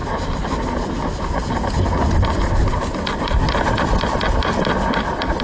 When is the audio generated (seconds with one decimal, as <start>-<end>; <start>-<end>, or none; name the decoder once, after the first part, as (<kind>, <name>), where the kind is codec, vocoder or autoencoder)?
none